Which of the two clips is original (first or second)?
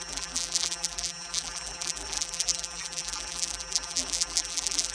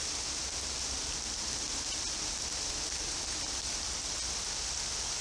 second